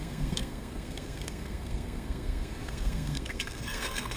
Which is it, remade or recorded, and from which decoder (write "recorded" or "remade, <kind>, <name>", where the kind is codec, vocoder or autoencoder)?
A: remade, codec, SNAC